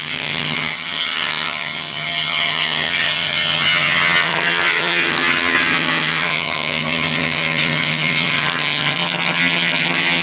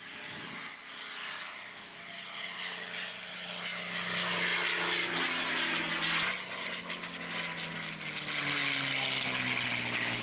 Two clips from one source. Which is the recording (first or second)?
second